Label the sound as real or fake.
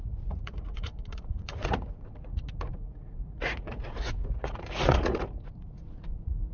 fake